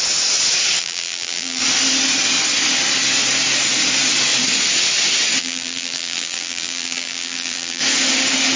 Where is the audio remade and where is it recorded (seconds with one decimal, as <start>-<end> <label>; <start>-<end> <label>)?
0.0-0.8 recorded; 0.8-1.6 remade; 1.6-5.4 recorded; 5.4-7.8 remade; 7.8-8.6 recorded